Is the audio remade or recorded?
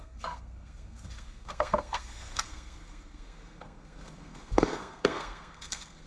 remade